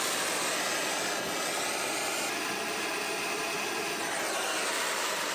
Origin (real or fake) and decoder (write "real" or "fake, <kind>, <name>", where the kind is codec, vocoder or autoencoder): real